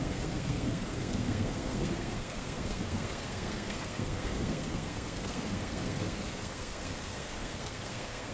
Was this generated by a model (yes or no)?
yes